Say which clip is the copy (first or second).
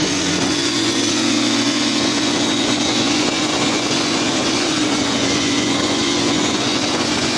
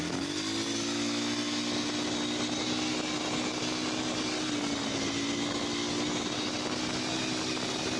first